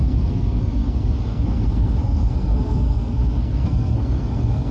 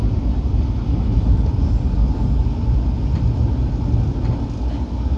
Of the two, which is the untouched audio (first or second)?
second